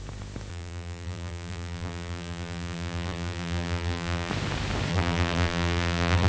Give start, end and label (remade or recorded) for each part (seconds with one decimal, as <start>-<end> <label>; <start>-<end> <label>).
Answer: 0.0-0.5 recorded; 0.5-4.3 remade; 4.3-4.9 recorded; 4.9-6.3 remade